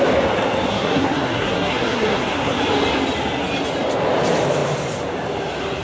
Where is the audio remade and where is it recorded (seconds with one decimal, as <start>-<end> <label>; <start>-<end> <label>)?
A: 0.0-0.7 recorded; 0.7-2.6 remade; 2.6-5.8 recorded